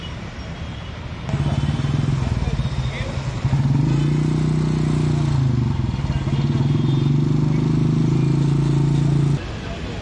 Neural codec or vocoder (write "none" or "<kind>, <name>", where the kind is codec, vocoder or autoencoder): none